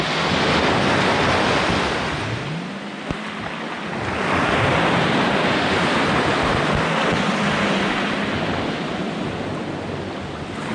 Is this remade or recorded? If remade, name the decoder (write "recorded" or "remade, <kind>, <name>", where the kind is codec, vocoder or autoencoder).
recorded